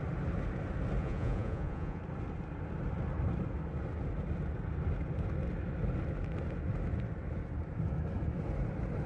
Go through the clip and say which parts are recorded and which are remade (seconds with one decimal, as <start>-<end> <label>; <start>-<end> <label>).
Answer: 0.0-1.0 recorded; 1.0-2.0 remade; 2.0-9.1 recorded